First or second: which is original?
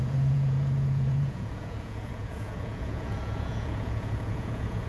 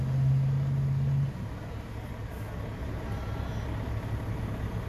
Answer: second